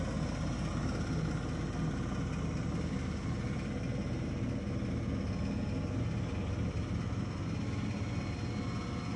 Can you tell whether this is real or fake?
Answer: real